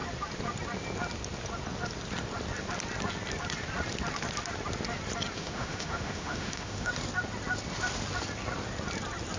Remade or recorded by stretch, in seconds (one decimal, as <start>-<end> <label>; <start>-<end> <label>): 0.0-5.4 recorded; 5.4-6.9 remade; 6.9-9.4 recorded